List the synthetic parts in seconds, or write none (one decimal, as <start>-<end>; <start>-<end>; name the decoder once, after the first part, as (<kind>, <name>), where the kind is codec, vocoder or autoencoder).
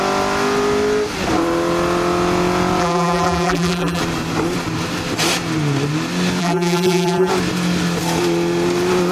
2.8-4.0 (vocoder, BigVGAN v2); 6.4-7.3